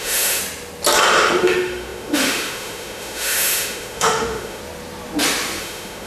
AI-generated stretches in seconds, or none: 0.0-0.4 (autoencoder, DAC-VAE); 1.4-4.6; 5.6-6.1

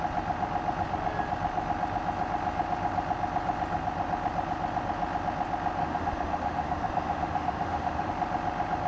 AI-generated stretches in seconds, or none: 5.8-8.1 (autoencoder, DAC-VAE)